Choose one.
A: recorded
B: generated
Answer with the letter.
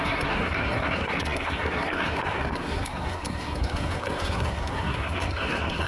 B